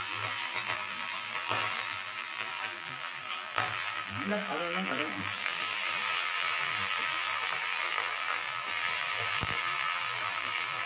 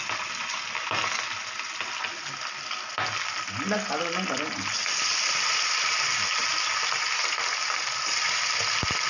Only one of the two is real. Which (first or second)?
second